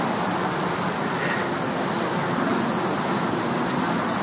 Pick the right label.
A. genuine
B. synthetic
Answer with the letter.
A